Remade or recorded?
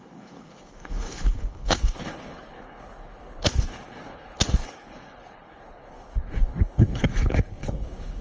remade